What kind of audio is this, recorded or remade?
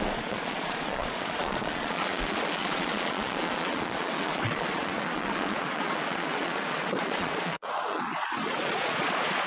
remade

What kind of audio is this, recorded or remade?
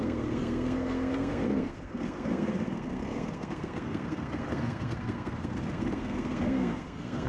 remade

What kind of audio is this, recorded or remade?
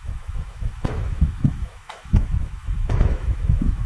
remade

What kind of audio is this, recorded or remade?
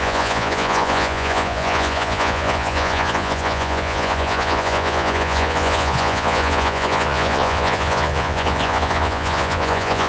remade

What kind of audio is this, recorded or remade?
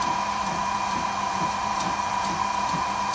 remade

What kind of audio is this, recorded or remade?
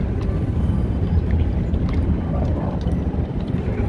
recorded